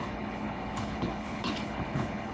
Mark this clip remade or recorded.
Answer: remade